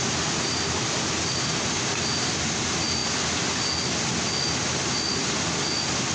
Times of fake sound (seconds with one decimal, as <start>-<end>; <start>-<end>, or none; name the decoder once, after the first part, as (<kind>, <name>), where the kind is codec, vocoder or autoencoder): none